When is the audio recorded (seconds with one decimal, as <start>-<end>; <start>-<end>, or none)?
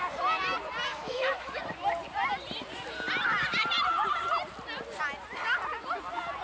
0.0-0.9; 1.6-6.4